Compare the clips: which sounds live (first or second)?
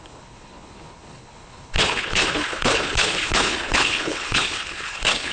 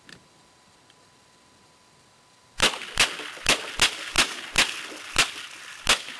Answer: second